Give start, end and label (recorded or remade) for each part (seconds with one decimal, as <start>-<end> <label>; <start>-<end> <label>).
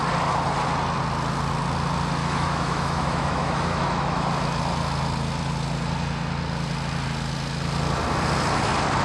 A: 0.0-2.2 recorded; 2.2-4.3 remade; 4.3-9.0 recorded